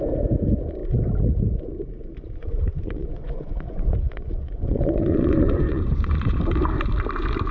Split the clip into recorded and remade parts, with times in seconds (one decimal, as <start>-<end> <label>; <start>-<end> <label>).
0.0-2.4 recorded; 2.4-6.4 remade; 6.4-7.5 recorded